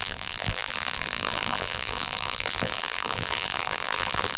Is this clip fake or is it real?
fake